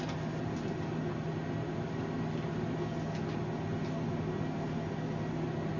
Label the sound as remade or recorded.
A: recorded